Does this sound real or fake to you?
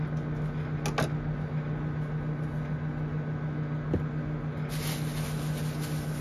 real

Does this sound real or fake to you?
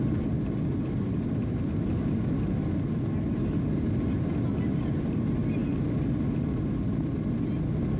real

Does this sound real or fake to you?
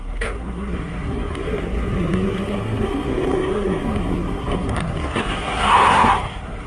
fake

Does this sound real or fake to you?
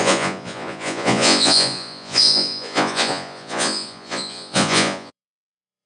fake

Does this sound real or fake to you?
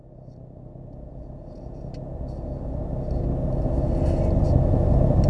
real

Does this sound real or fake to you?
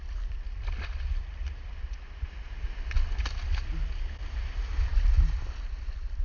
real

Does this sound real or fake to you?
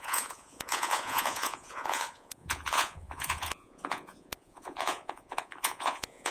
fake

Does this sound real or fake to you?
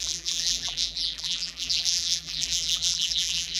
fake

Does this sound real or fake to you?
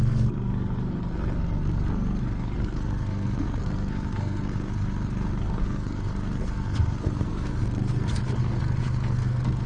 fake